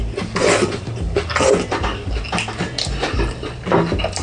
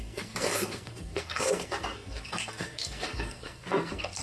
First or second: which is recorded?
first